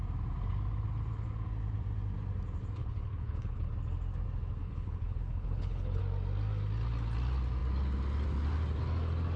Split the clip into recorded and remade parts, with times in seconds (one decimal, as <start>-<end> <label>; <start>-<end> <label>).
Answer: 0.0-2.8 recorded; 2.8-3.7 remade; 3.7-4.6 recorded; 4.6-6.0 remade; 6.0-9.4 recorded